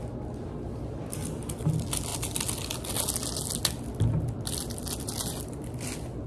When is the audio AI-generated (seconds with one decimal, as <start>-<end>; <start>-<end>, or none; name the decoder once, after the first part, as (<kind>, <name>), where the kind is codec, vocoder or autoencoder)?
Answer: none

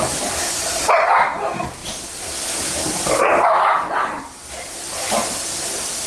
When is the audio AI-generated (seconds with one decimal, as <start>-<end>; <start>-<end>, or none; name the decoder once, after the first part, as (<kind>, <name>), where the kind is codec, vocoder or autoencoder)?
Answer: none

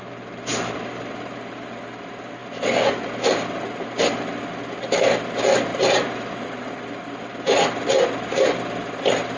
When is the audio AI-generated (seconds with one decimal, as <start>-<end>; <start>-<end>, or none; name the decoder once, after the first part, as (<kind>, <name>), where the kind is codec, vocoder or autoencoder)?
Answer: none

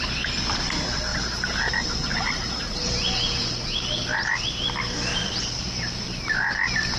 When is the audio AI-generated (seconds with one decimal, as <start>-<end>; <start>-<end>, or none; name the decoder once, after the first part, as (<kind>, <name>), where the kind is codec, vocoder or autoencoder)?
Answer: 1.1-1.7 (vocoder, BigVGAN v2); 2.1-3.0; 5.1-6.2

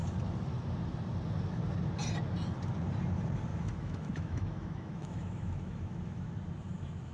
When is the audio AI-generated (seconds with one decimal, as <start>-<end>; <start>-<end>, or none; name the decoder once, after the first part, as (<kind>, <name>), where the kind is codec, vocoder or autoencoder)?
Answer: 3.5-6.3 (autoencoder, DAC-VAE)

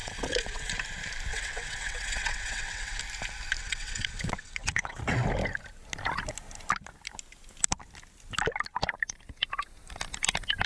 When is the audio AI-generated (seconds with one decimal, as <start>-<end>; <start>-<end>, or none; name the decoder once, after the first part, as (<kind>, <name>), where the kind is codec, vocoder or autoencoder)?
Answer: 0.0-0.7 (vocoder, WaveNeXt); 1.3-3.0; 3.6-5.0